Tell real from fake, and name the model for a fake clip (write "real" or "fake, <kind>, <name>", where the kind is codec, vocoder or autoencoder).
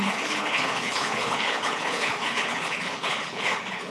fake, codec, HILCodec